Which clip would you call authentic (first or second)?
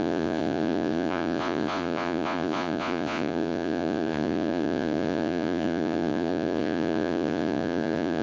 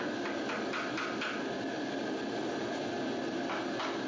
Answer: second